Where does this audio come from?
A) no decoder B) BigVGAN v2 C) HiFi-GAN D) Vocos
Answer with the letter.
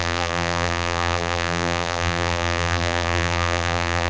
B